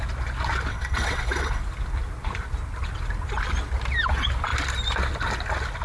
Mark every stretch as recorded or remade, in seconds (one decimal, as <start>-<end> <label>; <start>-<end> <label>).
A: 0.0-0.7 recorded; 0.7-1.6 remade; 1.6-5.8 recorded